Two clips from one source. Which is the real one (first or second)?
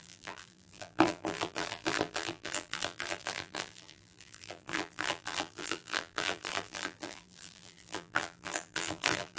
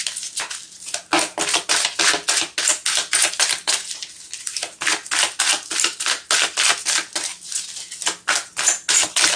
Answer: second